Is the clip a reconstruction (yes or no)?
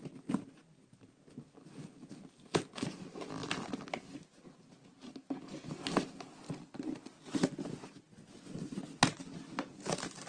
no